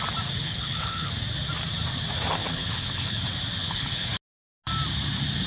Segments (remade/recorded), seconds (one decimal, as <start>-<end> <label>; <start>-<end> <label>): 0.0-0.4 recorded; 0.4-1.1 remade; 1.1-2.4 recorded; 2.4-3.2 remade; 3.2-3.6 recorded; 3.6-4.1 remade; 4.1-5.5 recorded